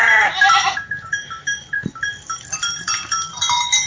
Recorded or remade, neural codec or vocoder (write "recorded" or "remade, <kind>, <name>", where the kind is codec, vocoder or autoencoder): remade, vocoder, BigVGAN v2